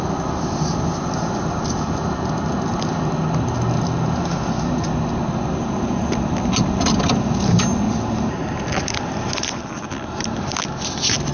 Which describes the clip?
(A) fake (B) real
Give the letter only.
B